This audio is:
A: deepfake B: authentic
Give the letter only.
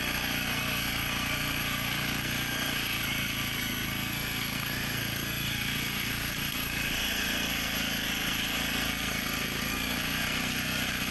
A